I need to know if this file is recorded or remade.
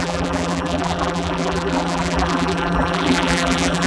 remade